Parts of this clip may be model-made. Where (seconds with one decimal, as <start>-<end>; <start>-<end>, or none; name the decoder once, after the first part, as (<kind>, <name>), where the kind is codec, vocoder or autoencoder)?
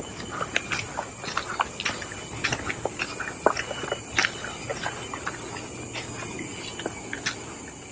none